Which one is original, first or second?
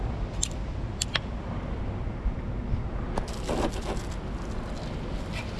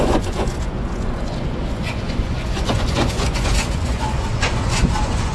first